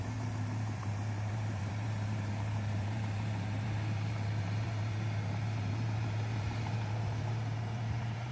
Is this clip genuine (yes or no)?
no